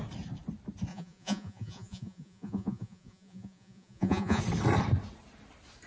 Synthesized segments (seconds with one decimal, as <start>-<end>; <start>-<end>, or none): 0.9-4.4